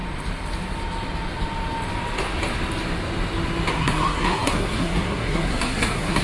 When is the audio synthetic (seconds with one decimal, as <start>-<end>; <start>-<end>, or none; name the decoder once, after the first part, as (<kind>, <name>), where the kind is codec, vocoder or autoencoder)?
3.7-6.2 (codec, SNAC)